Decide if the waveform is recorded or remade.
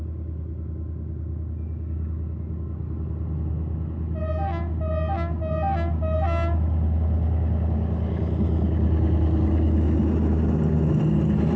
recorded